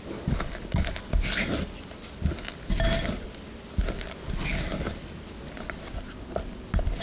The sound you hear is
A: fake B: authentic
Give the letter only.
B